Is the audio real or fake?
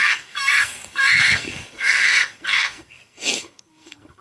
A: fake